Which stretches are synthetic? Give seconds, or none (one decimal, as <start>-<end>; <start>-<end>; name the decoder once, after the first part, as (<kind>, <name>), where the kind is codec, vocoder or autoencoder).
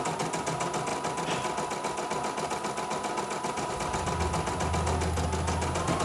none